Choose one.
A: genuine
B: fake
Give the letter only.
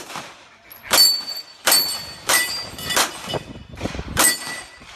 B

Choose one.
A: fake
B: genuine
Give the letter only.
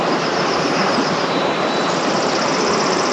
A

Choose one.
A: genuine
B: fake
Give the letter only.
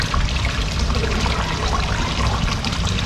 B